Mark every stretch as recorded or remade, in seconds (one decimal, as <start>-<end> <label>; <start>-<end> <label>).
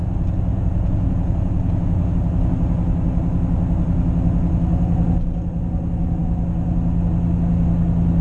0.0-0.5 recorded; 0.5-2.1 remade; 2.1-8.2 recorded